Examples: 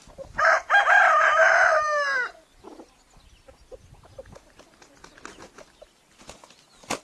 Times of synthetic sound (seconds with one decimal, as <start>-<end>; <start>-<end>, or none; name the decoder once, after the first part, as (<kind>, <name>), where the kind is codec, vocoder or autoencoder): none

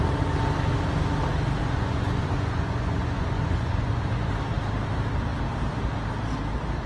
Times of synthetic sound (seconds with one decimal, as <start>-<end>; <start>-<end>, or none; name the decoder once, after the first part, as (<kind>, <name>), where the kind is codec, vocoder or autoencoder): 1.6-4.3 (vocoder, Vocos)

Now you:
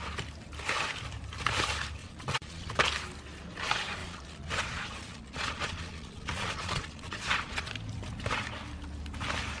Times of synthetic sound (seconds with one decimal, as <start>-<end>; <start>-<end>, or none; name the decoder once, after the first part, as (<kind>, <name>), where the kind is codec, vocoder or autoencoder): 2.0-2.7 (vocoder, Vocos); 4.0-7.7

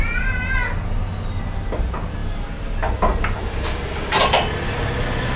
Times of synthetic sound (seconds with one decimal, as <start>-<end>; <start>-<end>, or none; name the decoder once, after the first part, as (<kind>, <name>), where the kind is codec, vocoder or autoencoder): none

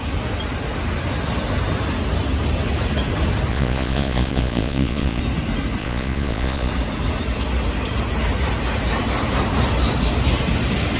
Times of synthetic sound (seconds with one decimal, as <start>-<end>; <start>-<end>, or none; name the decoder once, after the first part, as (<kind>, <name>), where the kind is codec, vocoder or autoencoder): 3.5-5.2 (vocoder, Vocos); 5.8-6.7

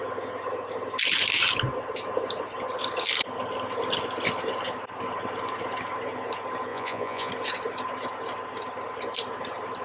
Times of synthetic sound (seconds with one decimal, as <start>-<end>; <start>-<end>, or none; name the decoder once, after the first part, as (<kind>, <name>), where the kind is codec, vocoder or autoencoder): 6.7-7.3 (vocoder, Vocos)

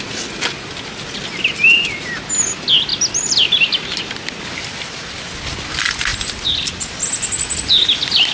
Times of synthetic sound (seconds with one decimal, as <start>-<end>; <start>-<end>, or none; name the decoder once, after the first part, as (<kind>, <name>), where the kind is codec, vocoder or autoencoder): none

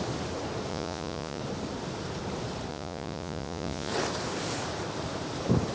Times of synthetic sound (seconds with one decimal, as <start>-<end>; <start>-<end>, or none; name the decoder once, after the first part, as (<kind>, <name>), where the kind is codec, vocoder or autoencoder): 0.7-1.4 (vocoder, Vocos); 2.7-3.9